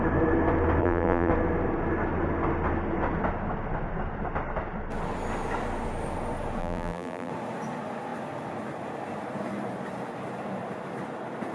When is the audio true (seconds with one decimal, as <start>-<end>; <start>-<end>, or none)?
0.0-0.8; 1.3-6.6; 7.3-11.5